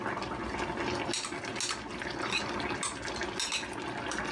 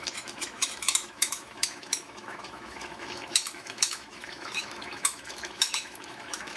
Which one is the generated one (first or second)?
second